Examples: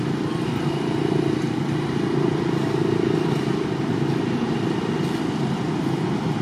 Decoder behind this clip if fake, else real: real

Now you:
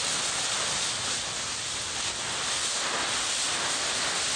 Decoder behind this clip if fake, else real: real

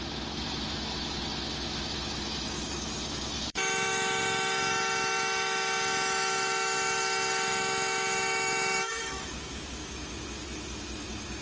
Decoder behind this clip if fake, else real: fake, autoencoder, DAC-VAE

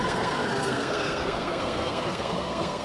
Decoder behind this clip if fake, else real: fake, codec, SNAC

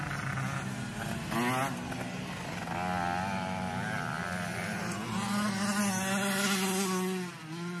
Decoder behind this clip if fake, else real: real